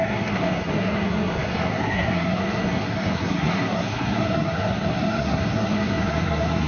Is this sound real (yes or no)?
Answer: no